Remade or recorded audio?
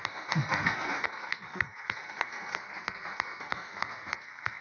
remade